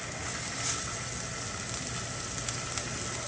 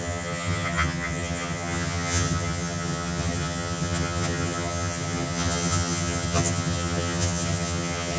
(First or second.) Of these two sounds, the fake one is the second